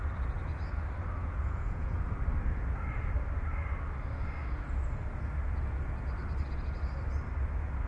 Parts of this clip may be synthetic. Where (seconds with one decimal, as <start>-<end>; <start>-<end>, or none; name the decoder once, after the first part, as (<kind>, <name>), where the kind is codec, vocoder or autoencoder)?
1.2-2.0 (vocoder, Vocos)